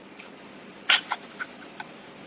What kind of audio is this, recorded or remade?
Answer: recorded